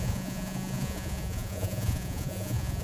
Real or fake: fake